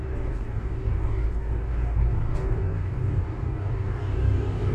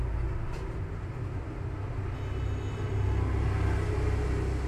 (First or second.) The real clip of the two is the second